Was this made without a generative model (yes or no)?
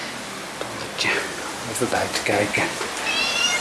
yes